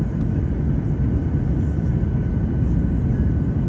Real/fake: real